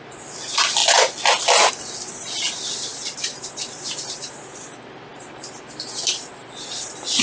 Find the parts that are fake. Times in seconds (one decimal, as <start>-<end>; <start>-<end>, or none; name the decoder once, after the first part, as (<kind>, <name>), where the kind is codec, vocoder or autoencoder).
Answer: 2.9-4.3 (vocoder, BigVGAN v2)